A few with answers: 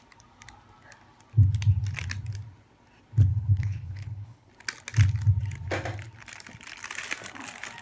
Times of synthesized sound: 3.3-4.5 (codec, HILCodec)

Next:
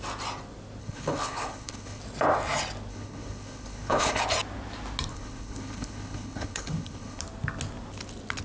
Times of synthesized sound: 0.8-2.0 (codec, HILCodec); 2.9-4.2; 5.1-7.2

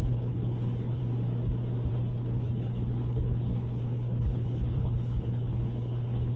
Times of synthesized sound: 0.0-1.0 (codec, HILCodec); 1.9-6.4

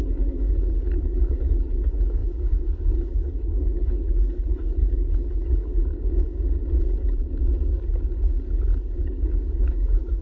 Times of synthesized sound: 0.0-5.8 (codec, HILCodec); 9.0-10.2

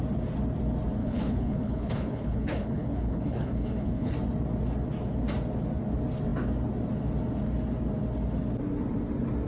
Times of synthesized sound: 1.0-4.1 (codec, HILCodec)

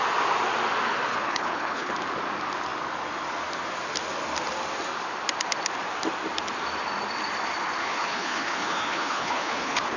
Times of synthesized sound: 1.2-1.9 (codec, HILCodec); 7.8-10.0

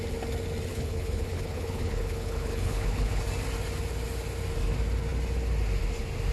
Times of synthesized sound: 0.7-3.2 (codec, HILCodec)

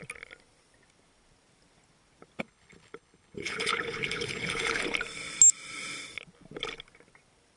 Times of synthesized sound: 2.4-4.8 (codec, HILCodec)